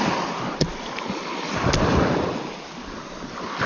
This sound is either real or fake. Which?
real